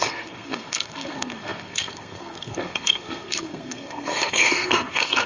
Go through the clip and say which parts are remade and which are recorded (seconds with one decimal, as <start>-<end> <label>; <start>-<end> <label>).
0.0-5.3 remade